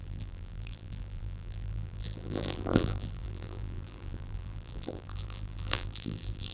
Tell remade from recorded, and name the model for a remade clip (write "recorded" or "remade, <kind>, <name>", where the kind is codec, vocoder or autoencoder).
remade, vocoder, BigVGAN v2